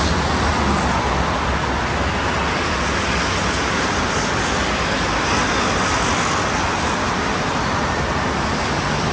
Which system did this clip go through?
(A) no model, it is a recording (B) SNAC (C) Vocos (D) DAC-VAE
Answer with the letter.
A